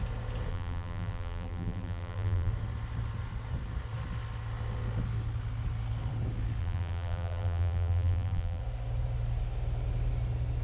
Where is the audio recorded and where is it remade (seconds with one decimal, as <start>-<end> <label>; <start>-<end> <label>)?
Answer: 0.0-0.5 recorded; 0.5-2.5 remade; 2.5-6.6 recorded; 6.6-8.6 remade; 8.6-10.6 recorded